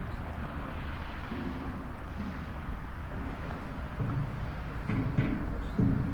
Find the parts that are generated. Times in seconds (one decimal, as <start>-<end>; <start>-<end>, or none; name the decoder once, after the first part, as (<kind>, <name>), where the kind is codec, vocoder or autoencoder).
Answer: 3.0-3.6 (autoencoder, DAC-VAE)